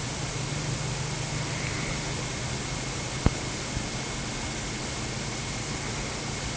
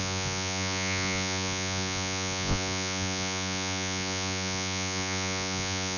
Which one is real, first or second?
first